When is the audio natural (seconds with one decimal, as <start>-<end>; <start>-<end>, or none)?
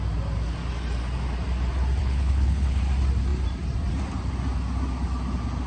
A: 0.0-2.0; 2.8-5.7